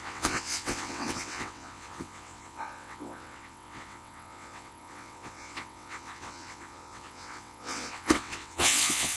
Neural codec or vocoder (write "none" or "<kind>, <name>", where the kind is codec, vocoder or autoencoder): vocoder, WaveNeXt